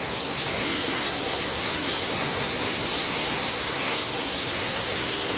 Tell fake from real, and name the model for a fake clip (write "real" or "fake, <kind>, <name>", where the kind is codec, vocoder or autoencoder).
fake, codec, SNAC